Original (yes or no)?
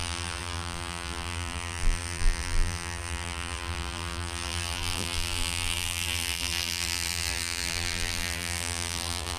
no